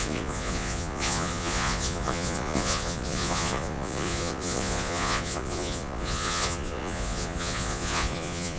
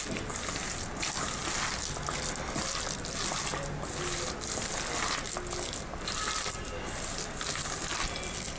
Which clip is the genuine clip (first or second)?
second